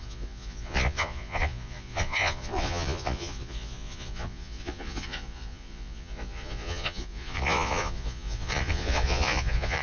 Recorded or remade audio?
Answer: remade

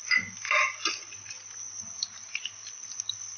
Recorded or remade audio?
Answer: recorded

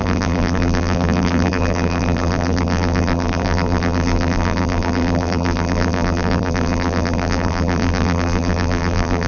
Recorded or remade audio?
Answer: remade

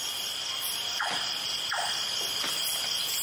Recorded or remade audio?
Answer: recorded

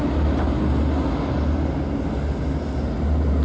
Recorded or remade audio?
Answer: recorded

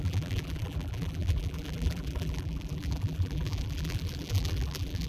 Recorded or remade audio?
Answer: remade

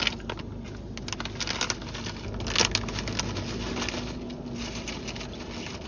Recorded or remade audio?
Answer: recorded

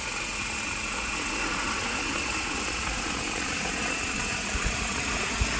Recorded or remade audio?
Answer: remade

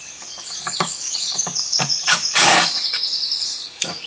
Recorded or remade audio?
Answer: remade